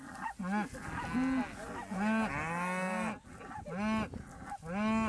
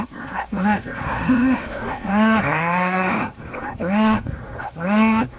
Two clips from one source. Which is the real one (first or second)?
first